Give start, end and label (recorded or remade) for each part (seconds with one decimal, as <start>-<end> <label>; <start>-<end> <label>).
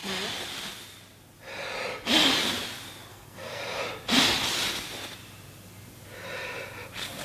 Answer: 0.0-3.1 recorded; 3.1-3.6 remade; 3.6-7.2 recorded